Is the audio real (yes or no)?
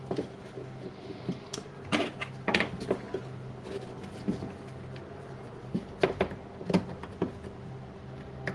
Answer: yes